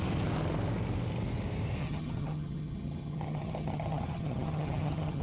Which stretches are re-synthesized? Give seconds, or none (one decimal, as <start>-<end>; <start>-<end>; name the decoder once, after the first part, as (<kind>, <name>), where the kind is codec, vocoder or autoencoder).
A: 1.8-5.2 (vocoder, HiFi-GAN)